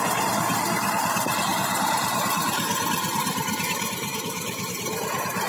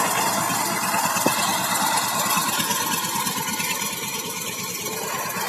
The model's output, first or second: first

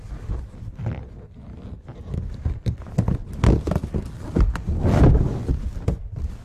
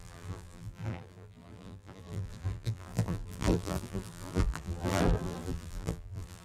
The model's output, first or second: second